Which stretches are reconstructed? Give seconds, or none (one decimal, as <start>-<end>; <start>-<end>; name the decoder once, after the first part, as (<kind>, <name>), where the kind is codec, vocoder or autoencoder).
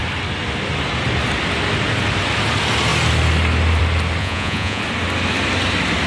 4.2-4.8 (vocoder, Vocos)